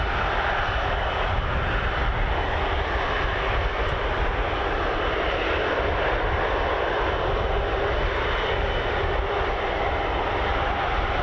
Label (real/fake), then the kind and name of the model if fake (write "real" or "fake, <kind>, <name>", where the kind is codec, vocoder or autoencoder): real